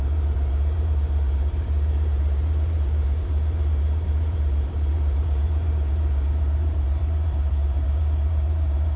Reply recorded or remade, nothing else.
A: remade